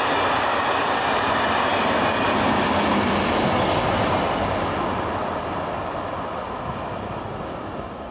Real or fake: real